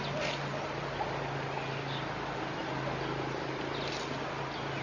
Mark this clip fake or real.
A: real